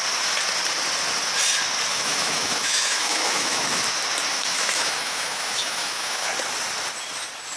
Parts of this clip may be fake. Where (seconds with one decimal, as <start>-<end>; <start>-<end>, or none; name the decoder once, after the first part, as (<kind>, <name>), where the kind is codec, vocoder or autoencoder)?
1.9-3.8 (autoencoder, DAC-VAE); 4.3-6.3